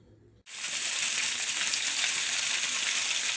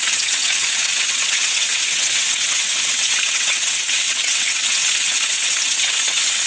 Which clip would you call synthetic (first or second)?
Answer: second